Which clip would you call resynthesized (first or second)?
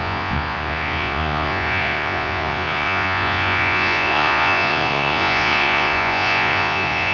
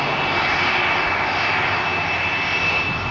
first